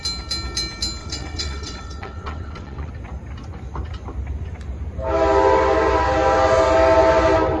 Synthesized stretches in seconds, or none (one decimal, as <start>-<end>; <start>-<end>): 1.0-2.9